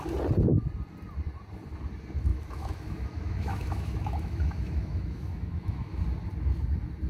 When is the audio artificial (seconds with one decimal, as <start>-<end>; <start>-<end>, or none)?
2.3-6.0